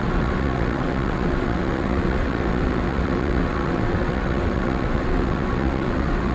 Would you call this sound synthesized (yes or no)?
yes